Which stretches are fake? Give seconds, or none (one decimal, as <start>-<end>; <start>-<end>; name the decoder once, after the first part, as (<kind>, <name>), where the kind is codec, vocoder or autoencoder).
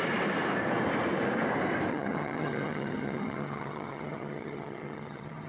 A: 1.9-5.5 (vocoder, HiFi-GAN)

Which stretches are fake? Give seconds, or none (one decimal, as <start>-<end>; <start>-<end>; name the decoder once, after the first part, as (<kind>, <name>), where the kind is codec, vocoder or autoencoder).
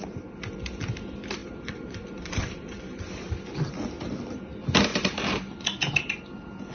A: 1.4-3.5 (vocoder, BigVGAN v2); 4.9-5.6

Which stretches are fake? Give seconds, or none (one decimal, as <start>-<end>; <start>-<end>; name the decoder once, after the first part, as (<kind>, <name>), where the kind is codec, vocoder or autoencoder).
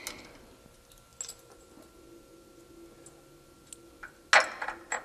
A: none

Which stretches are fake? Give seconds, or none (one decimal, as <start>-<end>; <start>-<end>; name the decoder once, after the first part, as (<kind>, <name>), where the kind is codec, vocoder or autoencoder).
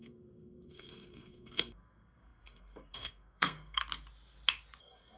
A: 0.0-3.8 (codec, SNAC); 4.8-5.2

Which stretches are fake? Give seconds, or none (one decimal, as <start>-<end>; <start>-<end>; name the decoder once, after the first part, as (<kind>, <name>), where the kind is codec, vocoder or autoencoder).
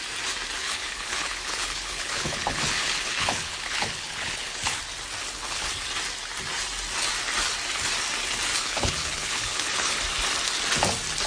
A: 0.6-4.8 (codec, HILCodec); 5.2-5.7; 8.6-10.0